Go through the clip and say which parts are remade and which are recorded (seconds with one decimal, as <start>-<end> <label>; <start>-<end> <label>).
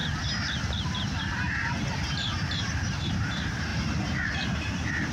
0.0-5.1 remade